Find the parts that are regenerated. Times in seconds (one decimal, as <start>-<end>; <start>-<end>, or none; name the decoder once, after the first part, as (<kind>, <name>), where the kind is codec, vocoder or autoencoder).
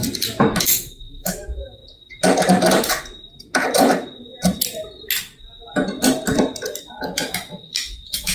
0.6-1.8 (autoencoder, DAC-VAE); 6.8-8.3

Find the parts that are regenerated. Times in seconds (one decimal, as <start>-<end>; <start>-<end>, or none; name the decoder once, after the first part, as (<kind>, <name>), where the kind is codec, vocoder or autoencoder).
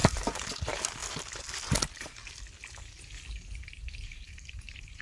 0.0-1.0 (vocoder, BigVGAN v2); 3.6-5.0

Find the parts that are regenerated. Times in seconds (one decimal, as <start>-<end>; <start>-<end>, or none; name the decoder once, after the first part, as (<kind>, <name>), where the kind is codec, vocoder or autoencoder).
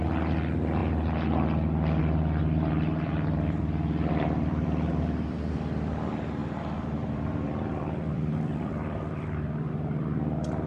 2.4-3.6 (vocoder, BigVGAN v2); 4.1-4.9; 6.4-9.7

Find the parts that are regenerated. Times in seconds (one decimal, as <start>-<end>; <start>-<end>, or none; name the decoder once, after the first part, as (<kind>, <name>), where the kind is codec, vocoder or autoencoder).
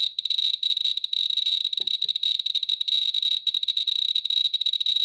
0.0-5.0 (vocoder, BigVGAN v2)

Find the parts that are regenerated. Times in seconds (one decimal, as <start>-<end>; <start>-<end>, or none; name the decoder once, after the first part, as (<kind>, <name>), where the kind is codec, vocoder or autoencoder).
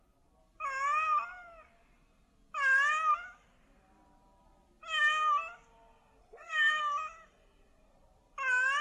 6.2-6.8 (codec, SNAC)